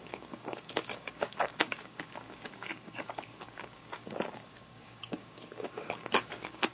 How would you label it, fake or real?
fake